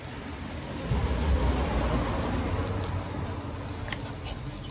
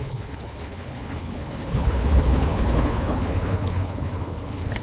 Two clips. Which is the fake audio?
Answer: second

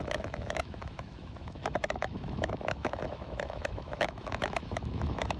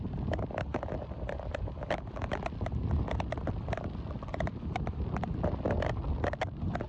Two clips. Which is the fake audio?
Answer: first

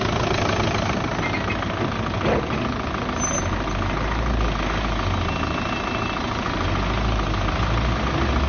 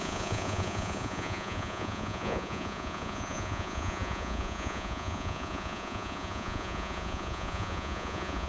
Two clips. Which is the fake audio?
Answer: second